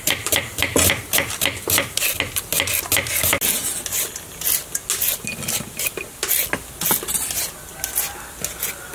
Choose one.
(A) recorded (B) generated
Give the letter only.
A